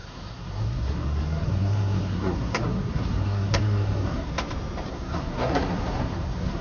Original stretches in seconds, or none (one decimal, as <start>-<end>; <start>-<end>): 4.3-4.9